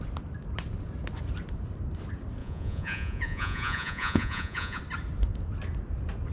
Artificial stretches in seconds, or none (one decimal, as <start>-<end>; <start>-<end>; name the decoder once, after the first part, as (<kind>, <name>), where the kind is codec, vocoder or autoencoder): 2.4-4.8 (vocoder, Vocos)